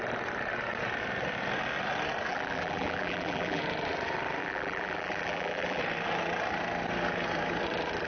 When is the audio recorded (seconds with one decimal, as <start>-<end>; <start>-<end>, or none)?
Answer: 0.0-2.3; 3.6-4.4; 5.8-8.1